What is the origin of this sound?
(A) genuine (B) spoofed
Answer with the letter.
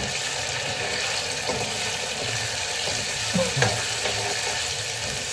A